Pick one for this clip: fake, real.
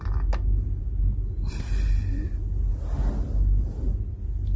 real